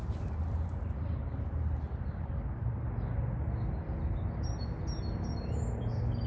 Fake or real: real